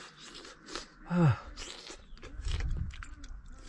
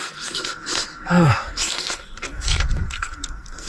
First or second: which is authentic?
first